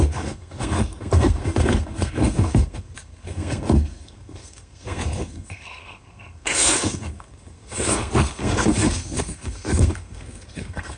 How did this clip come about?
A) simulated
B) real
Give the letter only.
A